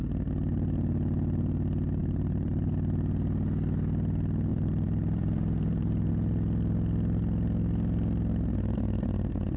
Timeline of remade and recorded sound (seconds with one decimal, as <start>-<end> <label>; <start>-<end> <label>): 0.0-2.0 recorded; 2.0-2.7 remade; 2.7-4.5 recorded; 4.5-6.1 remade; 6.1-9.6 recorded